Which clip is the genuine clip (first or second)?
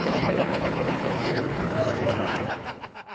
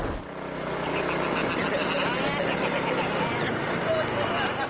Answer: second